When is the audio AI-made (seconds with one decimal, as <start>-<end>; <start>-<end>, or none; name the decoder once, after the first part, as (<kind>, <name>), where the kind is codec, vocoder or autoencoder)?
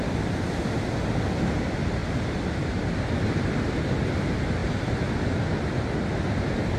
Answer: 4.6-5.4 (vocoder, BigVGAN v2)